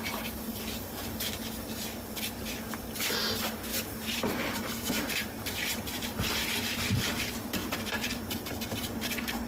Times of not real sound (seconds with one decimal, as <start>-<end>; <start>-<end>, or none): 3.7-6.2; 7.6-8.2